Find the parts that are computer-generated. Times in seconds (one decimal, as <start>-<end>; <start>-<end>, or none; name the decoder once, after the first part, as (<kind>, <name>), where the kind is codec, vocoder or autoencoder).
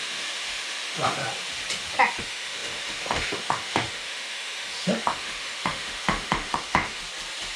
0.0-1.2 (autoencoder, DAC-VAE); 2.2-7.0